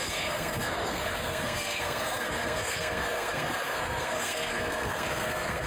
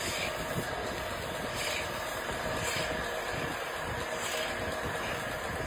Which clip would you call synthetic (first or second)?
first